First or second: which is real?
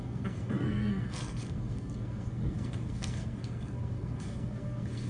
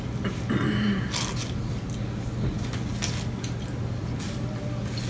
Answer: second